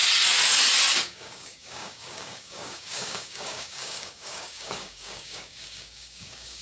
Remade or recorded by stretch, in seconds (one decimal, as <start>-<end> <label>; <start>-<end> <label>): 0.0-0.9 recorded; 0.9-6.6 remade